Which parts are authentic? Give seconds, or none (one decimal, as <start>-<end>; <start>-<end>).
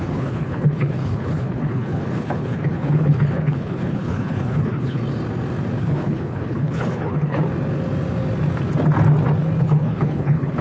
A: 5.0-5.8; 7.4-9.6